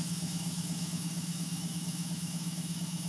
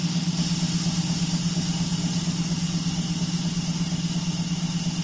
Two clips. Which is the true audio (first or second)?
second